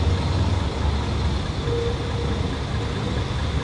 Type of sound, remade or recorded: recorded